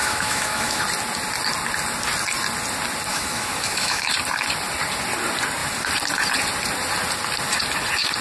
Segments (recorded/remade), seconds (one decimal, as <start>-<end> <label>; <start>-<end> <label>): 0.0-0.8 remade; 0.8-3.1 recorded; 3.1-4.1 remade; 4.1-8.2 recorded